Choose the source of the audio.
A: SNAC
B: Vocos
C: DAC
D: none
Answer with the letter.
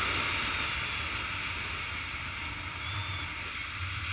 D